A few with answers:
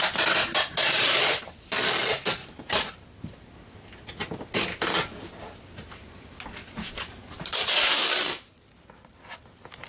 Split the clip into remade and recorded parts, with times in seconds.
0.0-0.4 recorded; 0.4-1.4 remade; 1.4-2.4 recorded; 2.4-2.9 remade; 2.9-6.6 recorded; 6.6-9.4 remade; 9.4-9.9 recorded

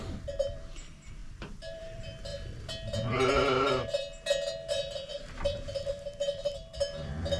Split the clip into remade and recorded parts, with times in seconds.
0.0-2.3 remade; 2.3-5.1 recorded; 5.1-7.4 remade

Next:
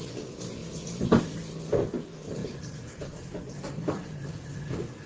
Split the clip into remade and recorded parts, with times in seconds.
0.0-2.4 recorded; 2.4-4.1 remade; 4.1-5.1 recorded

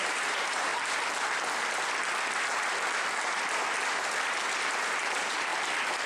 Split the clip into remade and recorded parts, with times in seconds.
0.0-0.7 remade; 0.7-4.4 recorded; 4.4-5.5 remade; 5.5-6.1 recorded